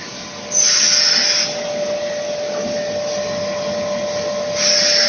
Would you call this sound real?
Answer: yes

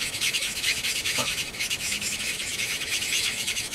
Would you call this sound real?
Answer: no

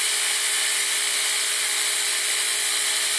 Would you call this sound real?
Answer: yes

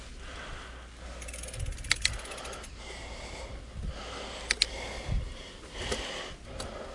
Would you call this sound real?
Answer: yes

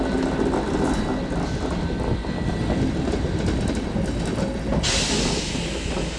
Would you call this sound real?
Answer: yes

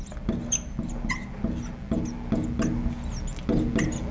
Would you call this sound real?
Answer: yes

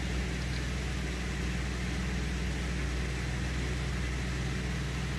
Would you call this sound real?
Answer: yes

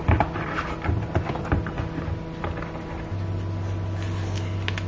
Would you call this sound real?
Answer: yes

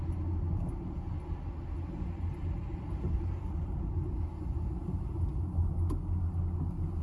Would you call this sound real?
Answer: yes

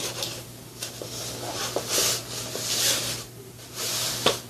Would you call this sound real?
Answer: yes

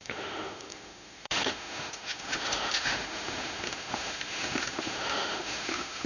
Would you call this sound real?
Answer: no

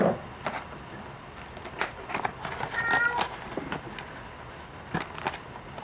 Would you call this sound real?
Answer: yes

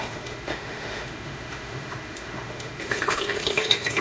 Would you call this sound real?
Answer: no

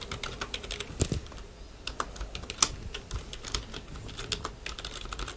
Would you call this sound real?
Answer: yes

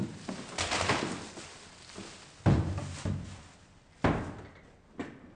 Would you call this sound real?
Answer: yes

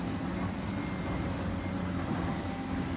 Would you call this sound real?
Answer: yes